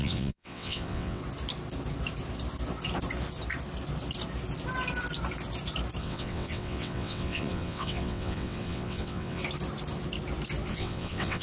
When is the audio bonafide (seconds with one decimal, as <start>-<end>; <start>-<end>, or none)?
1.2-6.0; 9.4-10.7